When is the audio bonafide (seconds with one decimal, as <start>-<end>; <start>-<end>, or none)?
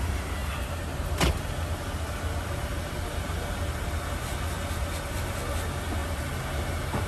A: 0.0-2.7; 4.0-6.0